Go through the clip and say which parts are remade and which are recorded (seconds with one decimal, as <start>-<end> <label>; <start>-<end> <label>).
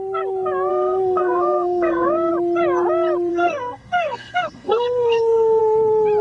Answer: 0.0-0.7 recorded; 0.7-2.3 remade; 2.3-3.3 recorded; 3.3-5.6 remade; 5.6-6.2 recorded